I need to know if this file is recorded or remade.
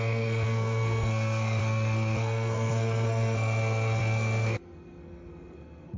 remade